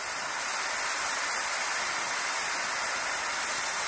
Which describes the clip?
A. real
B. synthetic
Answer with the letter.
A